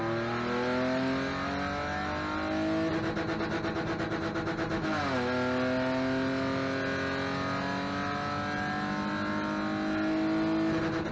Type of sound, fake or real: real